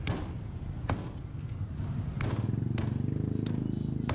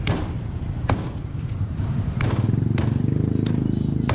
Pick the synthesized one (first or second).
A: second